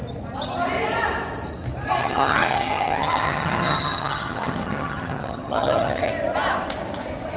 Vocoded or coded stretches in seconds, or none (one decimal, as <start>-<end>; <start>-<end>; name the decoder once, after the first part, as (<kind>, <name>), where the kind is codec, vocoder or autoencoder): 2.0-6.1 (vocoder, HiFi-GAN)